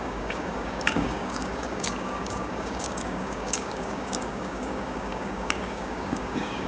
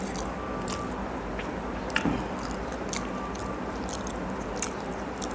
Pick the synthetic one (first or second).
first